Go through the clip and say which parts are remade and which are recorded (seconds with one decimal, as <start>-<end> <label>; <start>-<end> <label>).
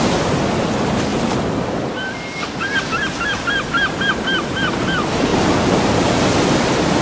0.0-7.0 recorded